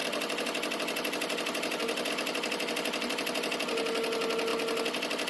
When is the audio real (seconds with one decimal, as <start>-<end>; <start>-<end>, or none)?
0.0-5.3